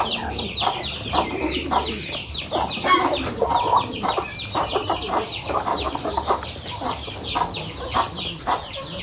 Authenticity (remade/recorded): remade